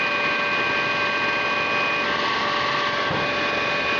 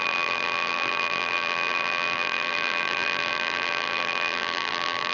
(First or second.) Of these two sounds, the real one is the first